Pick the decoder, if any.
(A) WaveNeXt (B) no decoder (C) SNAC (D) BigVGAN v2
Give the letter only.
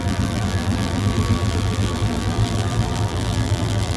D